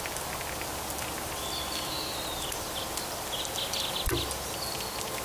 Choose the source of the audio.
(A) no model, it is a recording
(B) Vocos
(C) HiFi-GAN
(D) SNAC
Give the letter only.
A